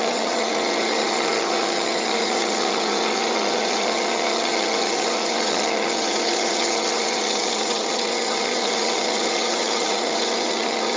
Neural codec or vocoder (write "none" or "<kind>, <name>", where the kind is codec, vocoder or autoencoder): vocoder, HiFi-GAN